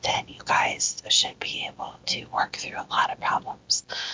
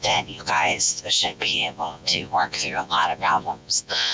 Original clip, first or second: first